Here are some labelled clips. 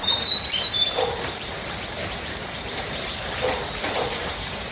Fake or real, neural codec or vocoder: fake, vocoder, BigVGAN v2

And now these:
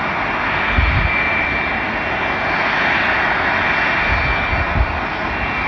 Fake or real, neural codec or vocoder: real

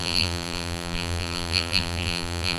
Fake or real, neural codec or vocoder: fake, vocoder, BigVGAN v2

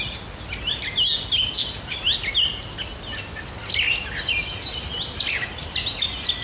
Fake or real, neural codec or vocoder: real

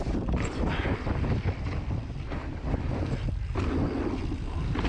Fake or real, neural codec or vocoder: fake, vocoder, BigVGAN v2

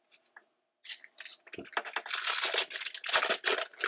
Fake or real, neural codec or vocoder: real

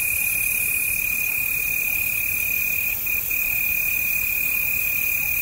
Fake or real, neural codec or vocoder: fake, vocoder, BigVGAN v2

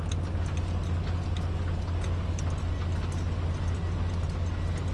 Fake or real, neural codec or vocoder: real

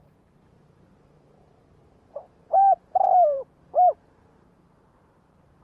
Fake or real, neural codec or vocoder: fake, vocoder, BigVGAN v2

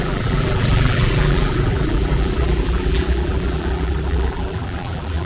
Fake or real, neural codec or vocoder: fake, vocoder, BigVGAN v2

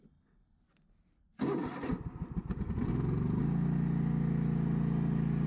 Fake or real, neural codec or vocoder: real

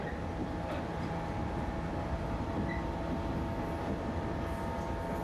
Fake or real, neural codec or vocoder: real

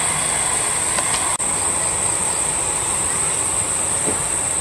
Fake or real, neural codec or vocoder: real